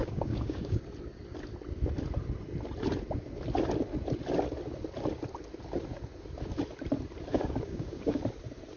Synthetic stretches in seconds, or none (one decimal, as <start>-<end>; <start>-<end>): 0.0-0.8; 7.3-8.2